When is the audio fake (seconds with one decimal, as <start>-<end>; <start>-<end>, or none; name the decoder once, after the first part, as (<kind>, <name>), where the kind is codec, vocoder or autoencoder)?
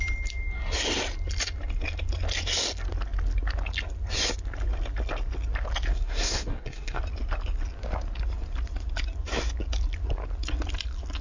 5.9-7.0 (codec, SNAC)